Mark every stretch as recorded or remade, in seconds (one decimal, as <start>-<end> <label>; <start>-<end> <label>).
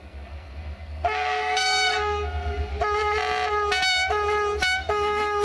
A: 0.0-2.7 remade; 2.7-4.9 recorded; 4.9-5.4 remade